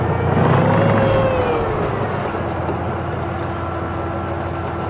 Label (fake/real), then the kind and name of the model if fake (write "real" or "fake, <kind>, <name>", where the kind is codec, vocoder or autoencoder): real